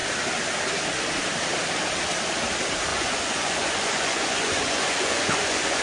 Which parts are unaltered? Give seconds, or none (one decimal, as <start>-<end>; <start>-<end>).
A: 0.0-2.9